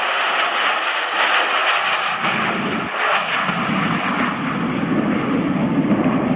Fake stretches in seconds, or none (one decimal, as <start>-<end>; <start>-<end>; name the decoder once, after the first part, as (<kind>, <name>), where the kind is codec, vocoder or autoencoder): none